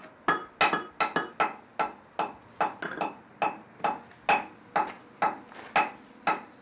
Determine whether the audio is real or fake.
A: real